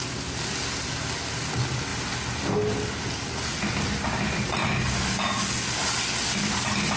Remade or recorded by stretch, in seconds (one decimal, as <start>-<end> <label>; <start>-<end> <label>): 0.0-7.0 recorded